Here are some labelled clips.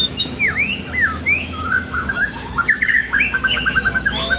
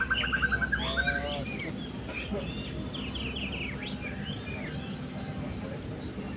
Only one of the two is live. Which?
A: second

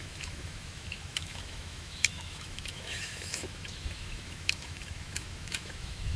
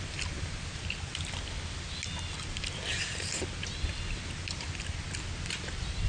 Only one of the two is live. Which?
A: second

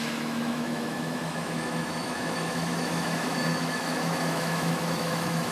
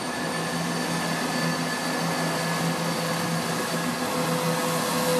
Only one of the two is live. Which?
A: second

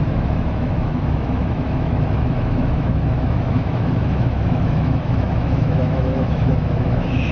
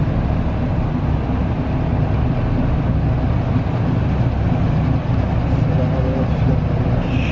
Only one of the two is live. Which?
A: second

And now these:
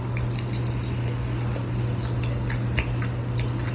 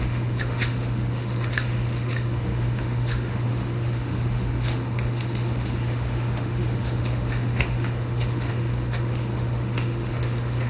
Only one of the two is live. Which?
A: first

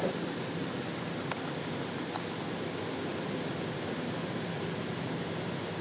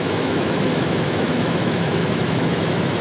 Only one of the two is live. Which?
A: first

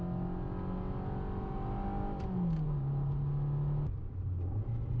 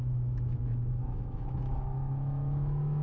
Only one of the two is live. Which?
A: first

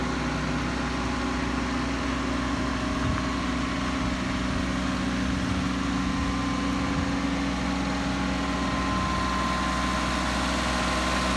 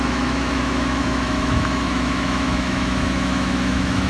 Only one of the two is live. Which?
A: first